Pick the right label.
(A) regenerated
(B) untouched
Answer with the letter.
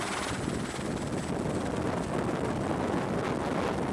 B